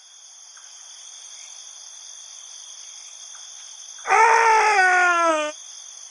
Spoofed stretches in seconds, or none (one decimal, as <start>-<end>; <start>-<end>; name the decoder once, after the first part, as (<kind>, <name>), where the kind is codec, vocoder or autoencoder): none